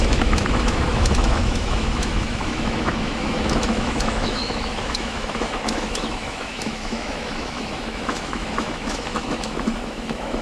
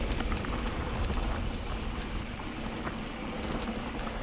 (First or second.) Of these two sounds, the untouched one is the second